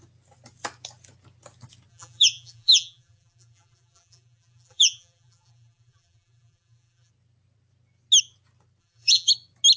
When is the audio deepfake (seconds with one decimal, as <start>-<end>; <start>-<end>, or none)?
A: 1.9-7.1; 8.8-9.3